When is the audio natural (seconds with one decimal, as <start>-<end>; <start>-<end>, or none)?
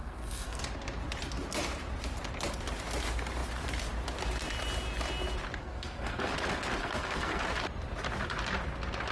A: 0.6-5.6; 6.3-6.8; 7.4-9.1